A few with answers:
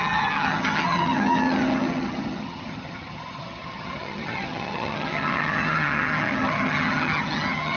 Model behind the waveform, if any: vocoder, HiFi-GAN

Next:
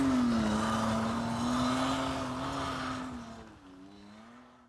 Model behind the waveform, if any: none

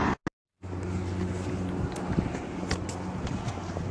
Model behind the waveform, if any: none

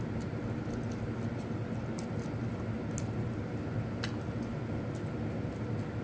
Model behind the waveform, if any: none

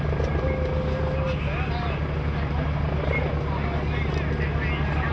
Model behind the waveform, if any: none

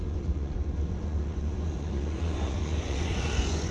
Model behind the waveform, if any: vocoder, Vocos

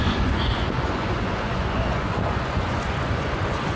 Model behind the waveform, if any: vocoder, Vocos